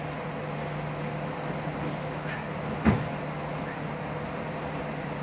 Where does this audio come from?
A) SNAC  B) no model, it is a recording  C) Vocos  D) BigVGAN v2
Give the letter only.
B